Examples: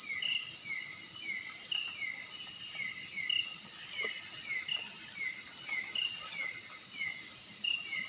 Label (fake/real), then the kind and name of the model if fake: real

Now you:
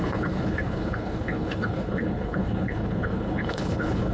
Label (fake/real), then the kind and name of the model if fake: fake, codec, HILCodec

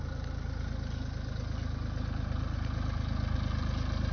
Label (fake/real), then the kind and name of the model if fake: real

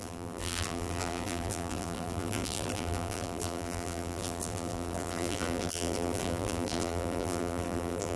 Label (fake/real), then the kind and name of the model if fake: fake, vocoder, BigVGAN v2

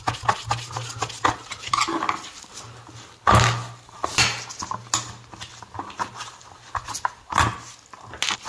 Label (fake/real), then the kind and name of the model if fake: real